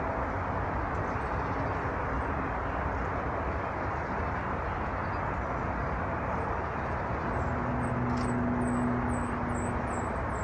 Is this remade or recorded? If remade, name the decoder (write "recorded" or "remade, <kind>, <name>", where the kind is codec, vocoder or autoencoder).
recorded